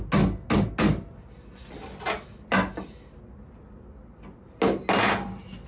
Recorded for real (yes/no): yes